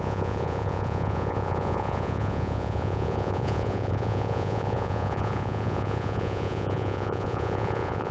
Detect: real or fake fake